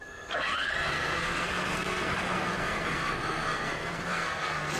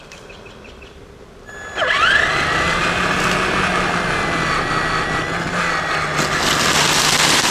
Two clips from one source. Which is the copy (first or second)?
first